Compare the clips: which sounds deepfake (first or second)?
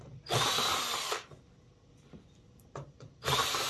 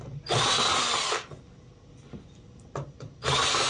first